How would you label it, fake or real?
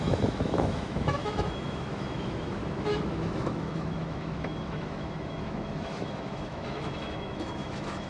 fake